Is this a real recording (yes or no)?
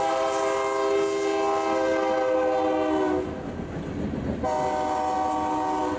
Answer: yes